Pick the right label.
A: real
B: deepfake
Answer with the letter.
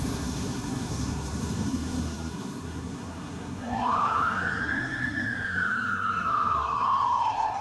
B